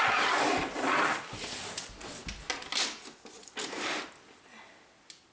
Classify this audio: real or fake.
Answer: real